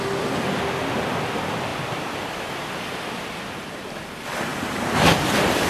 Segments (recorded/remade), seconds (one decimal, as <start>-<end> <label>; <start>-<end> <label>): 0.0-1.7 recorded; 1.7-2.6 remade; 2.6-4.5 recorded; 4.5-5.7 remade